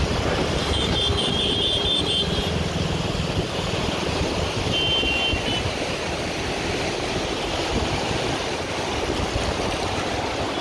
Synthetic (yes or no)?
no